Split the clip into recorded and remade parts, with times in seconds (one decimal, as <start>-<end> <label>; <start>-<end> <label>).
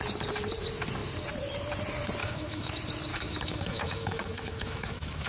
0.0-2.2 recorded; 2.2-2.7 remade; 2.7-3.1 recorded; 3.1-5.3 remade